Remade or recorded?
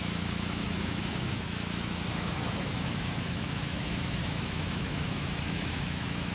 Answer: remade